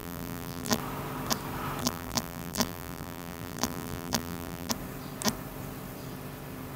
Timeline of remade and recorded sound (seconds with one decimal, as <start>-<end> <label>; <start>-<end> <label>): 0.0-0.8 remade; 0.8-1.8 recorded; 1.8-4.7 remade; 4.7-6.8 recorded